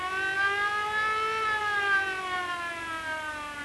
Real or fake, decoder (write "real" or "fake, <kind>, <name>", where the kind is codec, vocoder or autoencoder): real